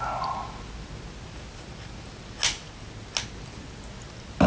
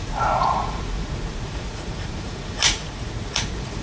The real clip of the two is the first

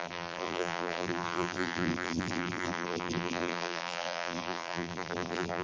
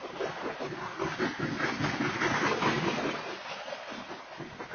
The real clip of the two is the second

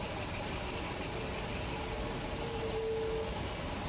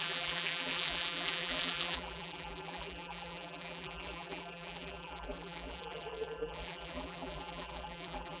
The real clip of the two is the first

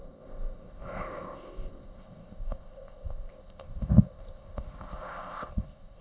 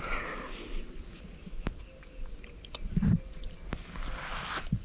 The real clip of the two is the second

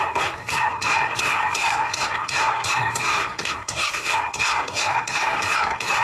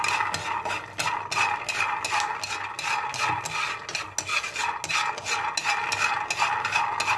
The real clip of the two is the second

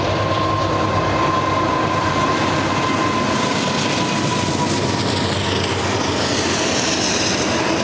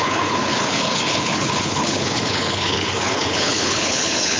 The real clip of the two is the first